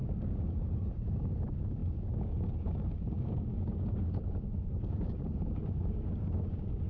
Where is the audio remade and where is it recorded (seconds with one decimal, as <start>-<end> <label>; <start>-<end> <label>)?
0.0-6.9 remade